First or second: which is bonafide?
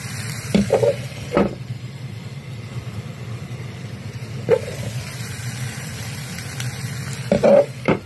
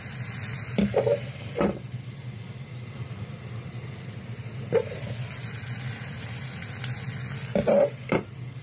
second